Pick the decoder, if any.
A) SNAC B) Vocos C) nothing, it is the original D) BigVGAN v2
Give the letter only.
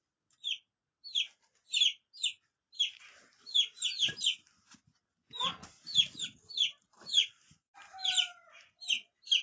C